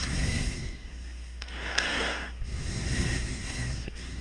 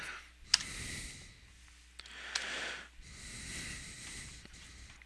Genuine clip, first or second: second